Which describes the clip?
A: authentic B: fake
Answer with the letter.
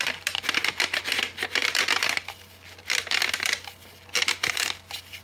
A